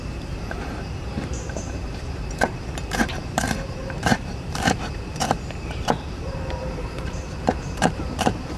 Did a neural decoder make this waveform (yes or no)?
yes